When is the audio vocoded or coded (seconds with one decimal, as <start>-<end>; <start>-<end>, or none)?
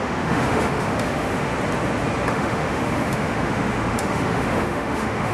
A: 0.0-1.5; 2.3-5.3